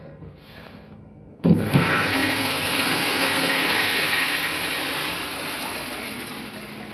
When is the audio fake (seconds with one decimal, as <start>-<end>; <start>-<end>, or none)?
0.0-4.5